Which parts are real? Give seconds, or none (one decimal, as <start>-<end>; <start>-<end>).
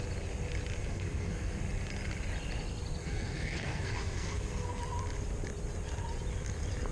0.0-0.8; 1.6-3.0; 4.8-6.9